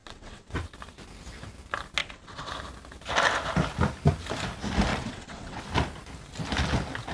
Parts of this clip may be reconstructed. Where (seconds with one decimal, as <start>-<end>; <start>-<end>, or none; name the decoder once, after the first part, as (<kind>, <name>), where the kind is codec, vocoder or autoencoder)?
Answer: 0.0-0.6 (vocoder, WaveNeXt); 2.0-2.5; 4.9-5.6